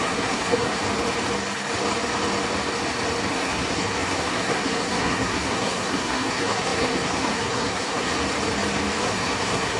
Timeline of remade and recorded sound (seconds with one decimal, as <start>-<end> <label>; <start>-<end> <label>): 0.0-0.8 remade; 0.8-3.3 recorded; 3.3-8.1 remade; 8.1-9.0 recorded; 9.0-9.8 remade